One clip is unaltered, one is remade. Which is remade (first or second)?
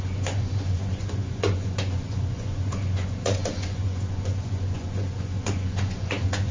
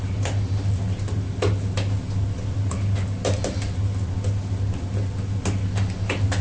first